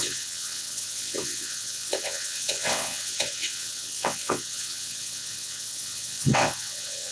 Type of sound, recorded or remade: remade